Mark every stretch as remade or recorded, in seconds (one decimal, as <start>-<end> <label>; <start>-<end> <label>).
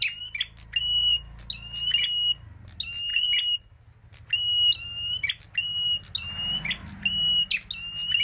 0.0-0.8 recorded; 0.8-1.4 remade; 1.4-8.2 recorded